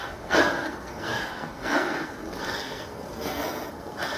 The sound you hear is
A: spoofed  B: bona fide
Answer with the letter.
A